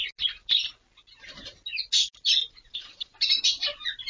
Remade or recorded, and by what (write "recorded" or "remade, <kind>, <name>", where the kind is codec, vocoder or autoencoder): recorded